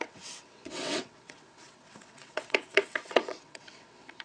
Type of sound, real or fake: fake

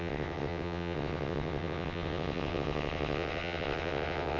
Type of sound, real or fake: fake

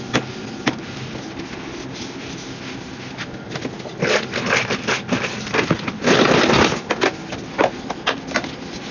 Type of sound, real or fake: real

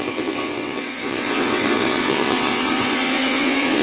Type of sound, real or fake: fake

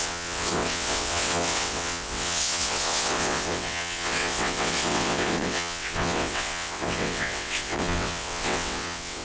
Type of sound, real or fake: fake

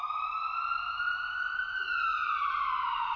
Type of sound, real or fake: real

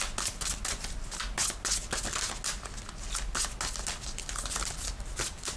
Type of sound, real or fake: real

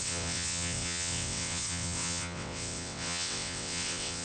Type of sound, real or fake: fake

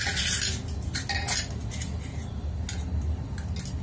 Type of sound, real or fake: real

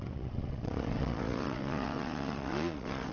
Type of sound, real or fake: fake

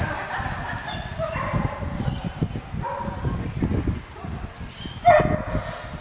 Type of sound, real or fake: real